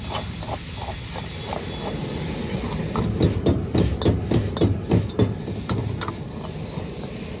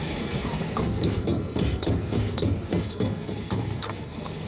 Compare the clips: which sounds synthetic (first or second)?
second